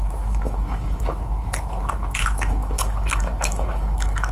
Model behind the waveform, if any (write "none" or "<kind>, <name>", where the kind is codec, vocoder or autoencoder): autoencoder, DAC-VAE